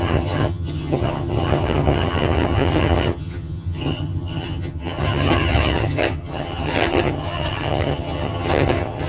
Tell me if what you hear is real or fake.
fake